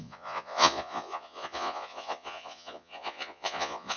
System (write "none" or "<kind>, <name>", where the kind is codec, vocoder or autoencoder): vocoder, Vocos